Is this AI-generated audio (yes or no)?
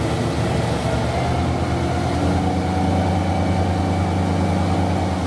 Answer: no